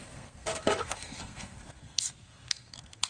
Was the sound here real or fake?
fake